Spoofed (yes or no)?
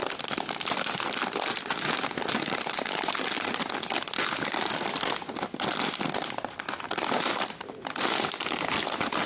no